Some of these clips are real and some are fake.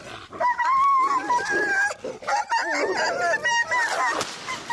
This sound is real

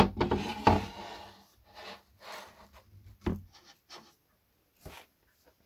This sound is real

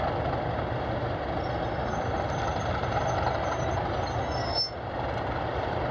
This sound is real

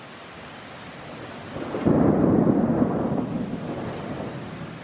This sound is real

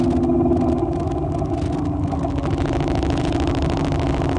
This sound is real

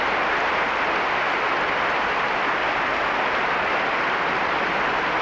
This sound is real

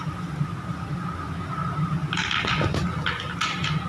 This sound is real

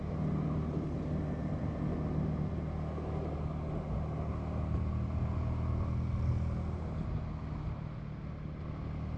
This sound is real